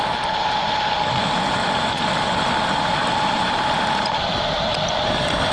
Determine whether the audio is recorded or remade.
recorded